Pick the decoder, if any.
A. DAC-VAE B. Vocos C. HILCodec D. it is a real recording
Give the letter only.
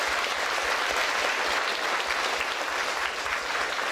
D